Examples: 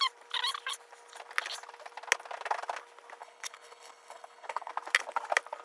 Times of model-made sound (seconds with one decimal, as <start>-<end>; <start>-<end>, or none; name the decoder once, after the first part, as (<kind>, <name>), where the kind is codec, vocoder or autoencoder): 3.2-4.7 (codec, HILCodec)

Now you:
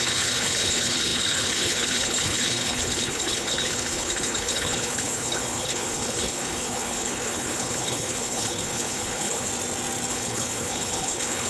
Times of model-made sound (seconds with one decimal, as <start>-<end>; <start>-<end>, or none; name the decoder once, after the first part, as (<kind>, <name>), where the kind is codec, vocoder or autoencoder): 0.0-9.5 (codec, HILCodec); 10.1-11.5

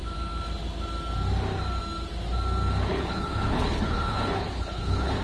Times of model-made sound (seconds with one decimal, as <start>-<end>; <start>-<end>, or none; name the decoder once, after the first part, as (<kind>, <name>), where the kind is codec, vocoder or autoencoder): 2.9-5.2 (codec, HILCodec)

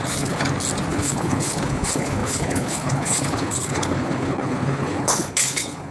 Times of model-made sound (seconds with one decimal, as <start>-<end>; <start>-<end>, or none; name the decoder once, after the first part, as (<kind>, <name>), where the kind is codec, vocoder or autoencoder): 0.0-0.4 (codec, HILCodec); 0.9-5.9

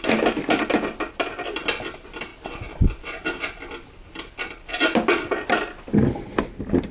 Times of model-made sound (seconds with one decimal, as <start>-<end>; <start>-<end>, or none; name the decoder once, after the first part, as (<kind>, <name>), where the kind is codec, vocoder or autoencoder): none